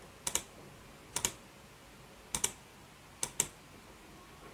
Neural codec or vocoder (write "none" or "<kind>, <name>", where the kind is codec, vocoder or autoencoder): none